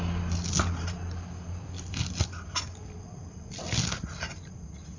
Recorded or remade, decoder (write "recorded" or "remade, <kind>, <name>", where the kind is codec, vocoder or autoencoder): recorded